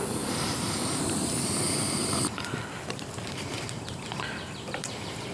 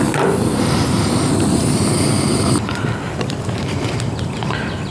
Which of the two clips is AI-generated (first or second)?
first